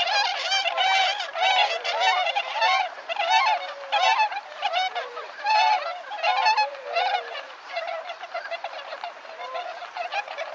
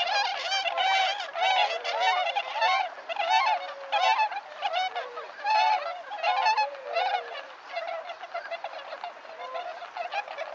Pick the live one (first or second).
second